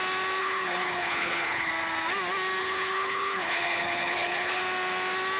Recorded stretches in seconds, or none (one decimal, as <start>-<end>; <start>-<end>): 0.0-0.4; 1.7-2.6; 4.6-5.4